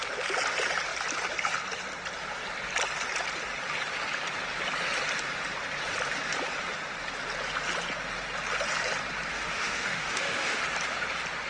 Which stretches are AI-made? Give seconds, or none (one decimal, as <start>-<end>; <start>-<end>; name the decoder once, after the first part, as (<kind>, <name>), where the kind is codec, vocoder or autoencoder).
9.3-10.6 (autoencoder, DAC-VAE)